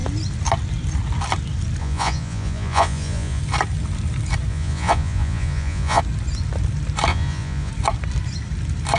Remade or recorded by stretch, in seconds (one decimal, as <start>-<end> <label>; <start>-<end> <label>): 0.0-1.8 recorded; 1.8-3.4 remade; 3.4-4.5 recorded; 4.5-6.0 remade; 6.0-7.1 recorded; 7.1-7.7 remade; 7.7-9.0 recorded